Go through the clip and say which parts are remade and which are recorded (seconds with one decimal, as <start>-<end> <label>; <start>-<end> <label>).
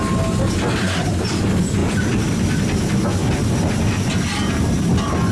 0.0-5.3 recorded